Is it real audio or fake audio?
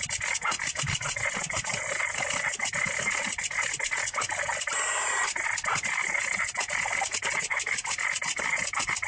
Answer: real